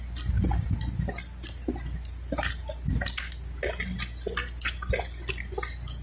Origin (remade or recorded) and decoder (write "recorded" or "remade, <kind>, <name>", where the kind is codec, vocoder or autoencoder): recorded